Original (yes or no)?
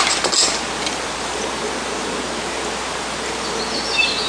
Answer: yes